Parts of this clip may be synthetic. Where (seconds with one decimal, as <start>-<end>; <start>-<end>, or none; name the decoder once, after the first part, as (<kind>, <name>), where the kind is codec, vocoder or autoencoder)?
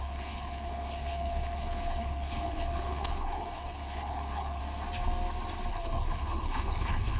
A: 0.0-4.6 (codec, HILCodec); 5.7-7.2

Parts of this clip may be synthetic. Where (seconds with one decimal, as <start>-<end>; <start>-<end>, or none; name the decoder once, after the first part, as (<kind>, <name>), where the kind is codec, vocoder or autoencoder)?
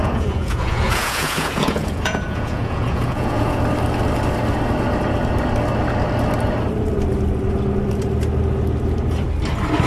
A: 0.0-3.6 (vocoder, Vocos)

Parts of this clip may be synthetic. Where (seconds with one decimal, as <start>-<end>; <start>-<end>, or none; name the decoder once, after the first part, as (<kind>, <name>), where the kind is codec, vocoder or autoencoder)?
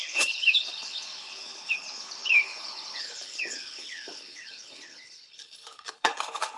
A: 0.0-6.6 (codec, HILCodec)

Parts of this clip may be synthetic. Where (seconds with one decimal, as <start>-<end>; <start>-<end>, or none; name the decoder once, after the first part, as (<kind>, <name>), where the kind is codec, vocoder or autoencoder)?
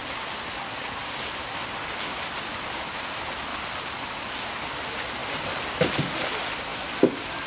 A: none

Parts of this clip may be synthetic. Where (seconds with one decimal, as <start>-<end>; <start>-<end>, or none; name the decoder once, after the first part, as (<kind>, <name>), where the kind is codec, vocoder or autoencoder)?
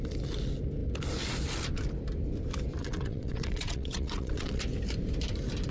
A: 2.8-4.6 (vocoder, WaveNeXt)